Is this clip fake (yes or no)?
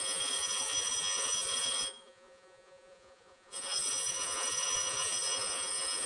yes